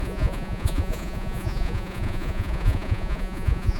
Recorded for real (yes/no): no